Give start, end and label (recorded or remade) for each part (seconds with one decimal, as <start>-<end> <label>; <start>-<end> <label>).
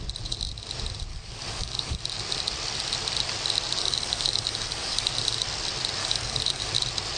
0.0-1.1 recorded; 1.1-2.0 remade; 2.0-3.8 recorded; 3.8-5.1 remade; 5.1-6.0 recorded; 6.0-6.7 remade; 6.7-7.2 recorded